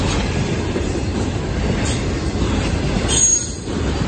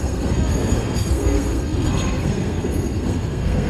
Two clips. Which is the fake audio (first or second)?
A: second